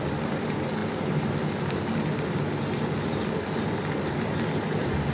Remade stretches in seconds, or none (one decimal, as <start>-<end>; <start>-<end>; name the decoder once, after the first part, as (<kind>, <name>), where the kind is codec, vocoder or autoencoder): 0.0-0.8 (vocoder, BigVGAN v2); 3.9-5.1